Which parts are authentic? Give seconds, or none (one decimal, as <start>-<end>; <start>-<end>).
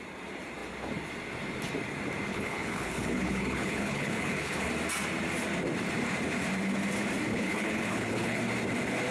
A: 0.0-2.3; 4.7-7.3; 8.4-9.1